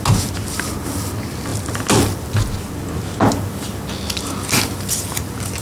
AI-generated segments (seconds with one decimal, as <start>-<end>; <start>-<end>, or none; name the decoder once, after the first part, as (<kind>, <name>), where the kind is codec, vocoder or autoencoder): none